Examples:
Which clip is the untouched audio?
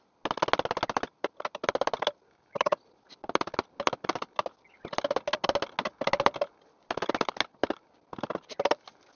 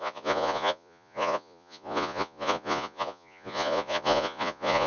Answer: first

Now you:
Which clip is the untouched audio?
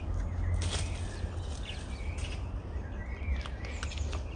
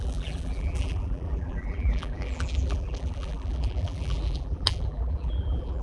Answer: first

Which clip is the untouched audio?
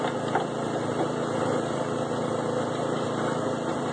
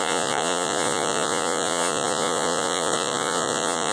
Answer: first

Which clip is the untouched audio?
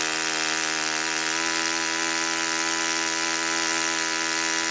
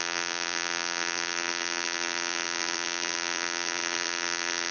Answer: first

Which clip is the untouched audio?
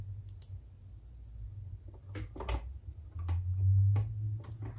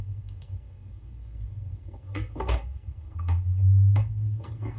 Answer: first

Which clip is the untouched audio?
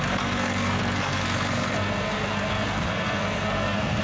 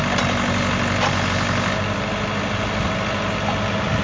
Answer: second